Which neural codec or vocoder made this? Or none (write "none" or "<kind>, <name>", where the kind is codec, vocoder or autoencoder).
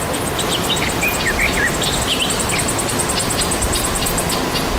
none